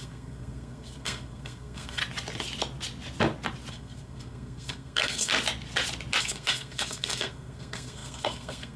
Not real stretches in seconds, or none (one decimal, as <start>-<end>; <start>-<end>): 0.0-2.0; 3.7-5.3; 6.2-8.8